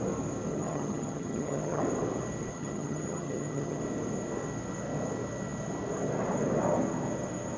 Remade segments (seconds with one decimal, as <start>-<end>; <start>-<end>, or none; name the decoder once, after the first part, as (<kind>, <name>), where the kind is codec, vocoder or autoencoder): 0.5-1.8 (vocoder, HiFi-GAN); 2.5-3.8